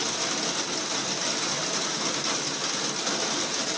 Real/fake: real